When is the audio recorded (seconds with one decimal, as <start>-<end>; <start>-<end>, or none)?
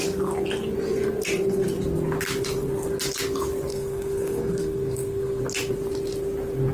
0.0-3.7; 5.4-6.7